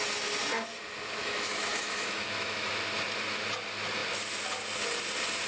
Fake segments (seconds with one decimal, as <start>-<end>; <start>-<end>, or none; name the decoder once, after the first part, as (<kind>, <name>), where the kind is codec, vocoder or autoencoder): 1.2-2.7 (autoencoder, DAC-VAE)